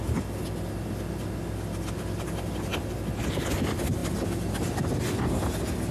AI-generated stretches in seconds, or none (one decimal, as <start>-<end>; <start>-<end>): none